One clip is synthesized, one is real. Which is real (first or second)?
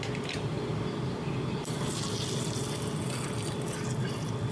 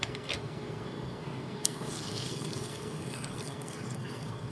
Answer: first